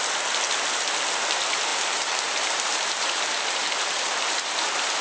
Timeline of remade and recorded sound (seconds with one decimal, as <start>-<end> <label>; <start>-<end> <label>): 0.0-1.7 recorded; 1.7-5.0 remade